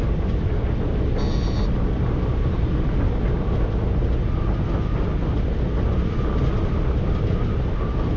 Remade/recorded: recorded